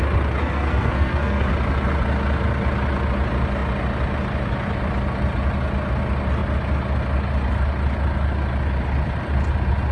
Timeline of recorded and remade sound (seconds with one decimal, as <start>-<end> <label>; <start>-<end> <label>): 0.0-0.4 recorded; 0.4-1.5 remade; 1.5-9.9 recorded